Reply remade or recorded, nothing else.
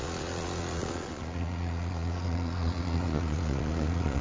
remade